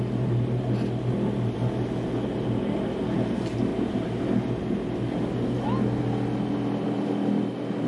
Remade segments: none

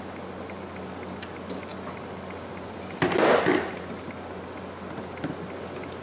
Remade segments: none

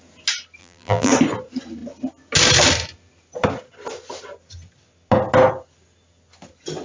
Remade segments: 0.6-1.1 (vocoder, BigVGAN v2)

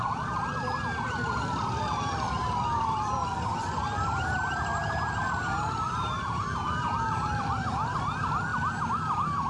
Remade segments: 0.0-4.7 (vocoder, BigVGAN v2); 5.3-8.5

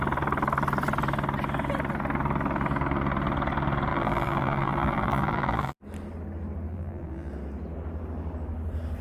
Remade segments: 3.9-5.8 (vocoder, BigVGAN v2); 6.7-7.3

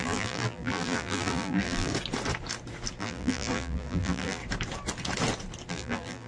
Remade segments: 0.0-1.9 (vocoder, BigVGAN v2); 3.0-4.4; 5.7-6.3